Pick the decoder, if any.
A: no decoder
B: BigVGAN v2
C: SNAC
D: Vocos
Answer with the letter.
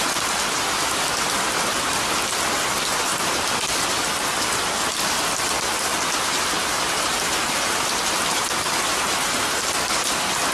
A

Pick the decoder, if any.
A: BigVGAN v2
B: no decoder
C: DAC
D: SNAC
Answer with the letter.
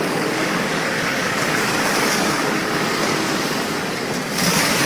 C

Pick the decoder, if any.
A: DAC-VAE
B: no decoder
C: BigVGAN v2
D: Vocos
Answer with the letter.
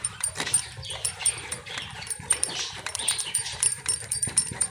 C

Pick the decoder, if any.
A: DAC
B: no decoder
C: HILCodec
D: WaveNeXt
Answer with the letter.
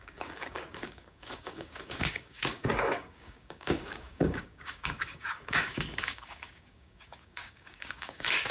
A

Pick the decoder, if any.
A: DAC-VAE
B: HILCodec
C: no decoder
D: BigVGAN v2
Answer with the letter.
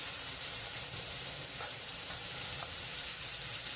D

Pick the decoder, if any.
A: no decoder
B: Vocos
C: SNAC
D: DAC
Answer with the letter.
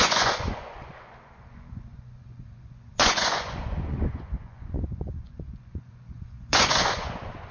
B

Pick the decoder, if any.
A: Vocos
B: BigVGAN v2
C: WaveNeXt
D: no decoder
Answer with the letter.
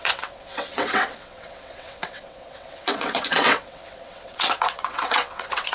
C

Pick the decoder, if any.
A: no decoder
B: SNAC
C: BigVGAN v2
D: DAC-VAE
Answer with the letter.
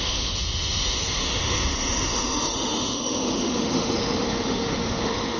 D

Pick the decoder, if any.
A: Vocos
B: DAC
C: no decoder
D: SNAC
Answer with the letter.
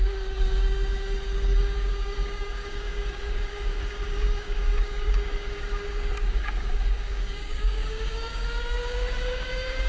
B